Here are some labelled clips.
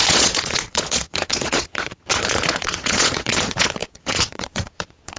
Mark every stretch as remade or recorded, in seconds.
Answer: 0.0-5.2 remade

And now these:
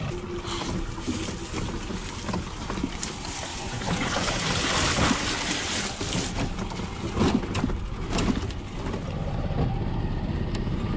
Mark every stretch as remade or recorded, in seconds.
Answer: 0.0-3.5 recorded; 3.5-4.4 remade; 4.4-11.0 recorded

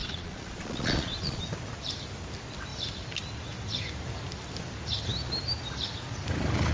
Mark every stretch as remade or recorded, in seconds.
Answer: 0.0-1.4 remade; 1.4-6.7 recorded

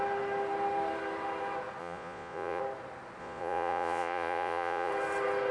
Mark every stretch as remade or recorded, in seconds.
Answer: 0.0-1.8 recorded; 1.8-2.6 remade; 2.6-3.2 recorded; 3.2-4.9 remade; 4.9-5.5 recorded